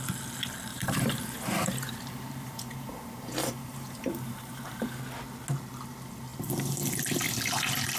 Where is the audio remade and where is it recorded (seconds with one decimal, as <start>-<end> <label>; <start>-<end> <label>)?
0.0-0.7 recorded; 0.7-5.0 remade; 5.0-8.0 recorded